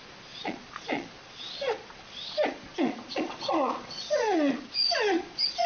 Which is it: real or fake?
fake